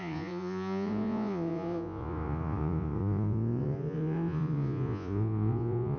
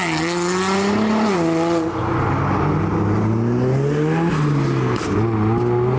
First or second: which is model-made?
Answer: first